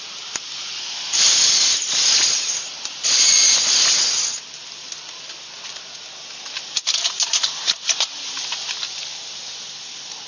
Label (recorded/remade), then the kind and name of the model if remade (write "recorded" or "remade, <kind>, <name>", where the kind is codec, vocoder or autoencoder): recorded